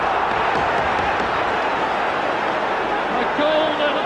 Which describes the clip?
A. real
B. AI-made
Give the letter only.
A